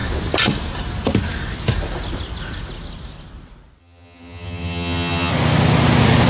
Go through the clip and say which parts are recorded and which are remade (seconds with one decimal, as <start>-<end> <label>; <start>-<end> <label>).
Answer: 0.0-3.8 recorded; 3.8-5.3 remade; 5.3-6.3 recorded